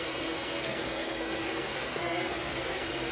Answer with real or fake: fake